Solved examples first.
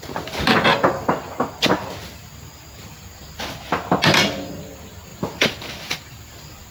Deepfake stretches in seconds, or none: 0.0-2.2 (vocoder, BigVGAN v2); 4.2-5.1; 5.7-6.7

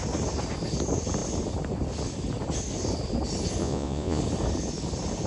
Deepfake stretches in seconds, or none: 3.6-4.2 (vocoder, Vocos)

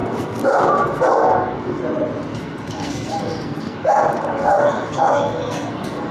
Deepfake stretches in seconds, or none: 0.0-1.8 (codec, SNAC); 2.3-6.1

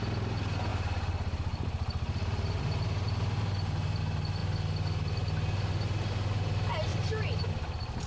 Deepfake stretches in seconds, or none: 0.7-4.0 (vocoder, BigVGAN v2); 6.9-7.5

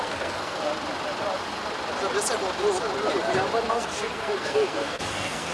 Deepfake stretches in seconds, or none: 0.0-0.7 (codec, SNAC); 3.7-5.5

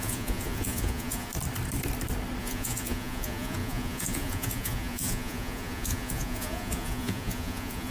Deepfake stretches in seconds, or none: 0.0-1.3 (vocoder, Vocos); 2.4-7.9

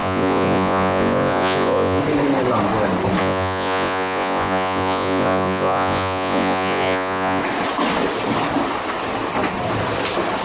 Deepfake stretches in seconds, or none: 0.0-2.0 (vocoder, Vocos); 3.2-7.4

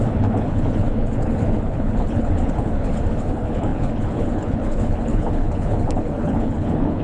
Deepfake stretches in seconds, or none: 0.0-7.0 (codec, HILCodec)